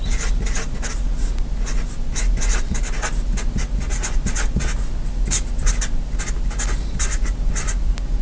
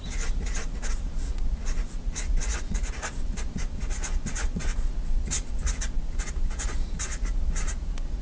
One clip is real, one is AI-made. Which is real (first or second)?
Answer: first